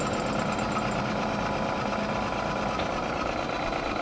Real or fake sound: real